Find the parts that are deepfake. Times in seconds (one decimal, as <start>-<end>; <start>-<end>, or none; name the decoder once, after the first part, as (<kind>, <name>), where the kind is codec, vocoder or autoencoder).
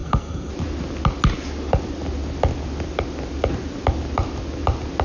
0.0-0.5 (codec, SNAC)